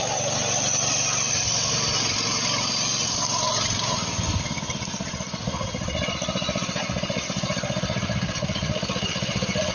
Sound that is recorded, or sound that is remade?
recorded